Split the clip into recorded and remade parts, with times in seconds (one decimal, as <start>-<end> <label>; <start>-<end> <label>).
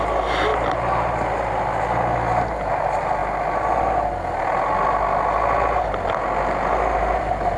0.0-7.6 recorded